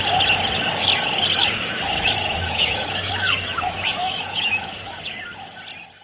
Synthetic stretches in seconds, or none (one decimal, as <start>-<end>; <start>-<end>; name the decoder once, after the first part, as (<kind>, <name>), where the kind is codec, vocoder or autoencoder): 1.4-5.0 (autoencoder, DAC-VAE)